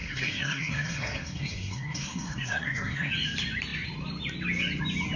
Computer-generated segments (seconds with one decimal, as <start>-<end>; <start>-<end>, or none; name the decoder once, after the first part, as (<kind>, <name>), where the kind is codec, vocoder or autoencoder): 0.0-3.1 (codec, SNAC)